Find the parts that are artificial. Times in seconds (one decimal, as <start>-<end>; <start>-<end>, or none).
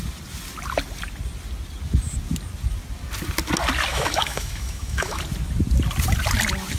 3.9-5.2